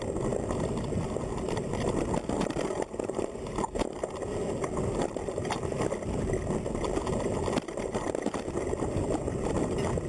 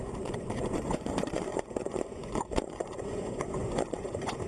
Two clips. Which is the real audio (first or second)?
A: first